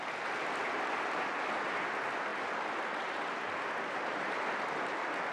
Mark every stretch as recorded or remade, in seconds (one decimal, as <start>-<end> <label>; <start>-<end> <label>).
0.0-5.3 remade